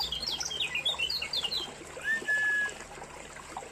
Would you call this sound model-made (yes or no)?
no